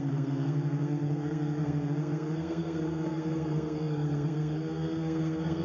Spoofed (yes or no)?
yes